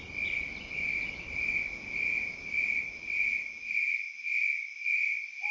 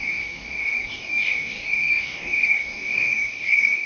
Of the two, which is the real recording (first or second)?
first